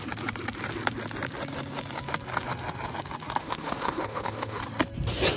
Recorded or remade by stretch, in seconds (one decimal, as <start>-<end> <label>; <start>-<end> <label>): 0.0-3.4 recorded; 3.4-4.6 remade; 4.6-5.4 recorded